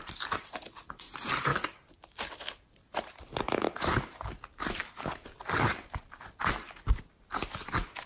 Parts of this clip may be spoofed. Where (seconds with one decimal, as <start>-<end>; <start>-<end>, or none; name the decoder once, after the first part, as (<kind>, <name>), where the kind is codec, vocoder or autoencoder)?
2.8-6.4 (vocoder, BigVGAN v2)